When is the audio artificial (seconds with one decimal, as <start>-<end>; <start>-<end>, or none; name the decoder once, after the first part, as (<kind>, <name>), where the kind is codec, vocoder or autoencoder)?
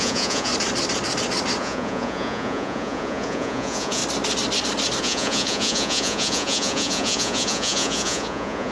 0.0-0.5 (vocoder, Vocos); 1.6-4.0; 5.0-8.7